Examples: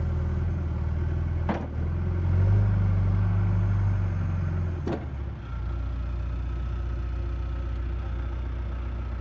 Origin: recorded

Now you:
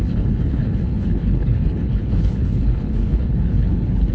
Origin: remade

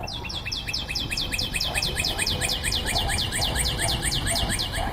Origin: recorded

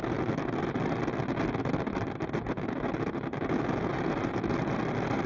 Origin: recorded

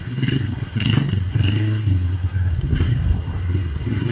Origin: remade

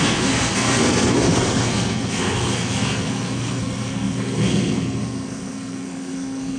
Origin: remade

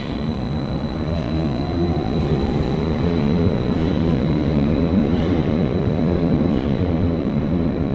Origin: remade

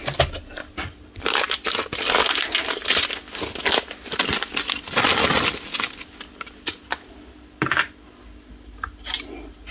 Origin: recorded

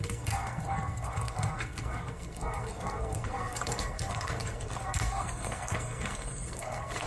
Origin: remade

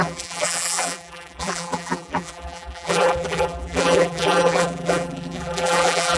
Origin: remade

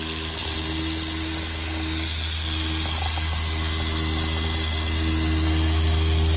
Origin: recorded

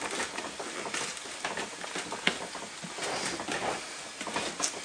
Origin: recorded